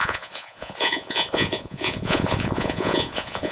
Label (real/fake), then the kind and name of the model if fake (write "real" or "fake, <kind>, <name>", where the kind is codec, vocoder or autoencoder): fake, vocoder, Vocos